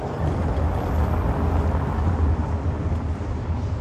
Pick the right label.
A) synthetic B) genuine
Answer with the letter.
B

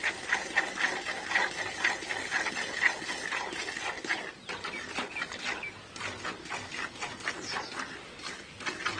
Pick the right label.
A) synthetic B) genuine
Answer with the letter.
B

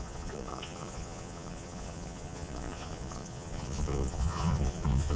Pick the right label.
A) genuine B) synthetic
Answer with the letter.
B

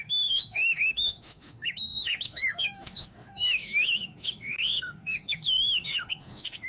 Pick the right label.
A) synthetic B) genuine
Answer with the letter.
A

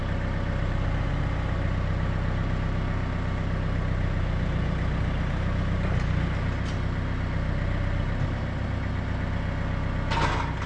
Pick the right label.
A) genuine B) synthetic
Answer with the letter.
A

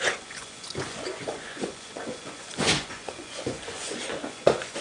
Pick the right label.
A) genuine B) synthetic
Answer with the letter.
B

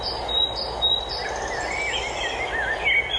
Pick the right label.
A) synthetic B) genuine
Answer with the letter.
B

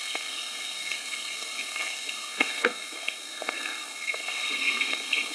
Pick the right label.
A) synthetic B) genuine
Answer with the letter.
A